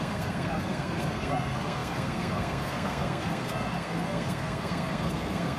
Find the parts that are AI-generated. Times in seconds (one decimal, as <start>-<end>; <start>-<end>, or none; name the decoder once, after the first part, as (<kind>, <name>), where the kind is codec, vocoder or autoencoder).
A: 0.0-5.6 (codec, SNAC)